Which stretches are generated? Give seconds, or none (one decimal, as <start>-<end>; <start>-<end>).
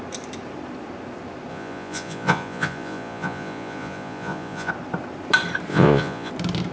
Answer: 1.5-4.7; 5.7-6.3